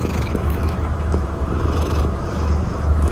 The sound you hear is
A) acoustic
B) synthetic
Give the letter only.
B